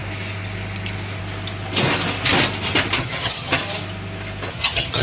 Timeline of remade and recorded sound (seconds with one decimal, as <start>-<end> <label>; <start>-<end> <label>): 0.0-3.0 recorded; 3.0-3.6 remade; 3.6-4.5 recorded; 4.5-5.0 remade